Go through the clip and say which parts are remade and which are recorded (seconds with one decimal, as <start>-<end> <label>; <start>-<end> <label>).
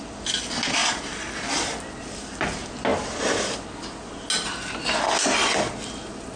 0.0-6.4 recorded